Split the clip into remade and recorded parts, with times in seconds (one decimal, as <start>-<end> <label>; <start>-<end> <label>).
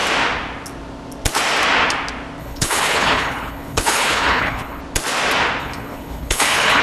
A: 0.0-2.4 recorded; 2.4-4.8 remade; 4.8-5.6 recorded; 5.6-6.8 remade